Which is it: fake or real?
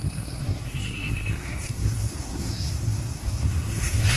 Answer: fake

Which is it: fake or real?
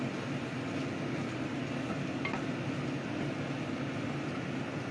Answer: real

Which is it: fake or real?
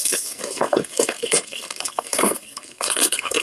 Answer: fake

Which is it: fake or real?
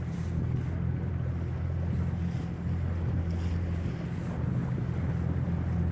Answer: real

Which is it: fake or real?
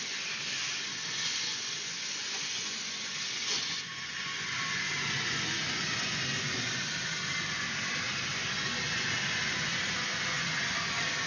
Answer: fake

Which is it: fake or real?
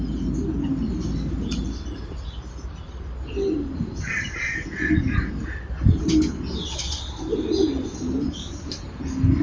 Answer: real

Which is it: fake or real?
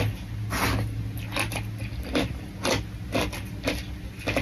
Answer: real